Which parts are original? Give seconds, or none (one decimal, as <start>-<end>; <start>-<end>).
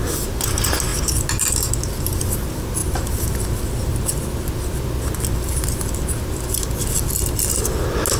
0.0-8.2